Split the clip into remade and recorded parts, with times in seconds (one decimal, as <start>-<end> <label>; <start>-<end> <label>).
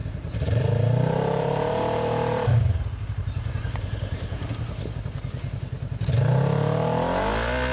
0.0-4.5 remade; 4.5-7.7 recorded